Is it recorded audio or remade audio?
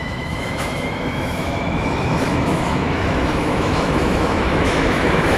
remade